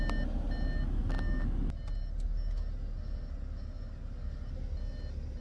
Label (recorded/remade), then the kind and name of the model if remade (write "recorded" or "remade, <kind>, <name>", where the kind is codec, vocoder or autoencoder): recorded